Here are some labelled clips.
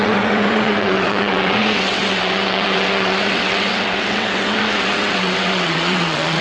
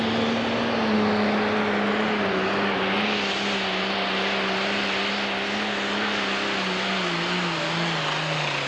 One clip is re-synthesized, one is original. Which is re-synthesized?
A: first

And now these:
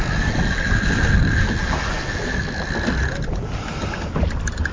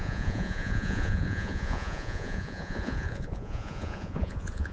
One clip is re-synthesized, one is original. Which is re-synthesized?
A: second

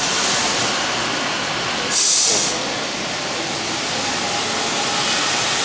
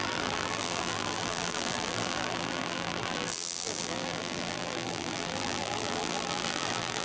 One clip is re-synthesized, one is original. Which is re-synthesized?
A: second